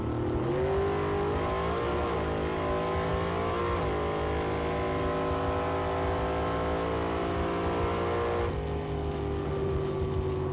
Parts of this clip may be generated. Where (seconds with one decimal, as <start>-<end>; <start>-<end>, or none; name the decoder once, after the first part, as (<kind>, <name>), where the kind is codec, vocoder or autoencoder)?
none